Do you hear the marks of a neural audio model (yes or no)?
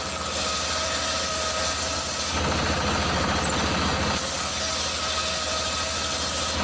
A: no